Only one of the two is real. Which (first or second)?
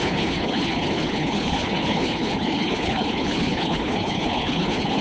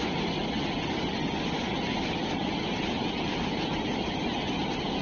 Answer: second